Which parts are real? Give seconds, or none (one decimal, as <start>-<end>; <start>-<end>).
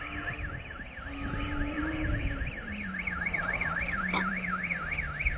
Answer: 0.0-1.3; 4.5-5.4